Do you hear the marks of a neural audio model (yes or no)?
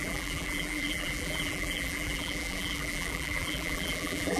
yes